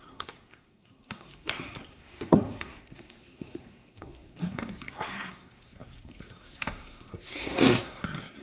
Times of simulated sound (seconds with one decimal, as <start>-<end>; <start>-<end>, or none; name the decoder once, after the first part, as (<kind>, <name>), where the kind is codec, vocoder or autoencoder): 0.0-8.4 (codec, SNAC)